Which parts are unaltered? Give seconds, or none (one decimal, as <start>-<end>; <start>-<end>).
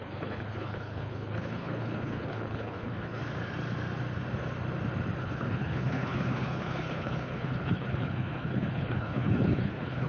3.2-5.2